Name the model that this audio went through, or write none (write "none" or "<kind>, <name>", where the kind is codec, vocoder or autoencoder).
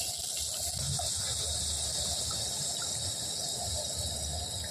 none